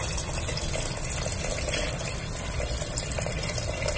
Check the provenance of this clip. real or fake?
real